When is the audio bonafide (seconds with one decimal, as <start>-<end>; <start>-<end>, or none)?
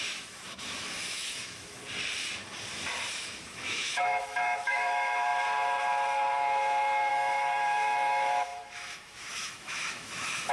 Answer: 1.8-3.1; 5.3-7.1